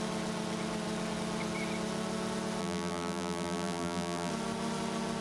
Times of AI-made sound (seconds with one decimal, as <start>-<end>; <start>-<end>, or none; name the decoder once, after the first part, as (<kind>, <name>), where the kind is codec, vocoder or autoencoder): 2.6-4.3 (vocoder, BigVGAN v2)